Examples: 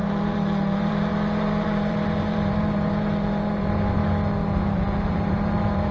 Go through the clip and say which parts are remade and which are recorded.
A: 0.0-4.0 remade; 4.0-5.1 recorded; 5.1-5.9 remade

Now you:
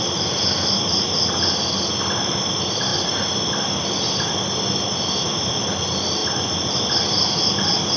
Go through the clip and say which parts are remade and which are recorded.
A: 0.0-2.9 recorded; 2.9-5.1 remade; 5.1-6.2 recorded; 6.2-6.9 remade; 6.9-8.0 recorded

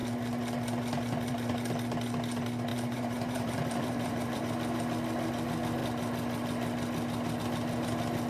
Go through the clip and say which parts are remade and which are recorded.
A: 0.0-2.7 recorded; 2.7-4.4 remade; 4.4-8.3 recorded

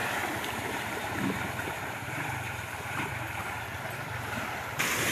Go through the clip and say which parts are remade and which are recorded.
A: 0.0-3.1 remade; 3.1-5.1 recorded